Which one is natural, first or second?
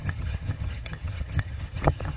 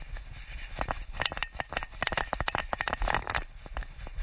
second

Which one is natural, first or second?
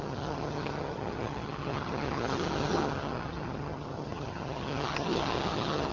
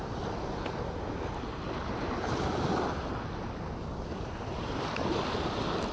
second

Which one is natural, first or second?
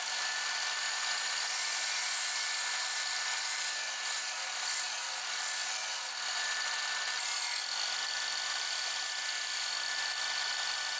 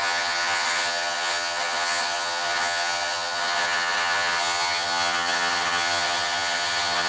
first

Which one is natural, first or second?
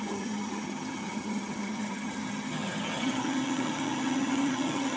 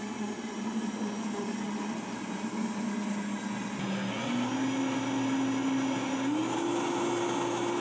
second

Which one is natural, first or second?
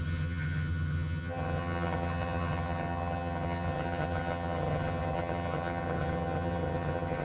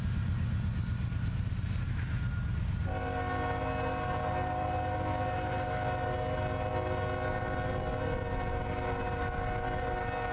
second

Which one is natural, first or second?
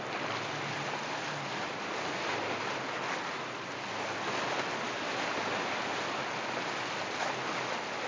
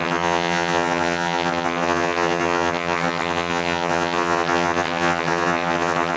first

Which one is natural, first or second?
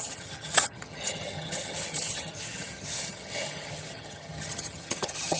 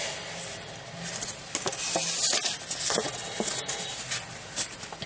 second